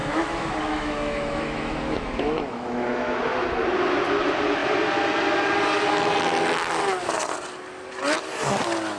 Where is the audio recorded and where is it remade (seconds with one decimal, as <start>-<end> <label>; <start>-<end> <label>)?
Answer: 0.0-3.2 remade; 3.2-9.0 recorded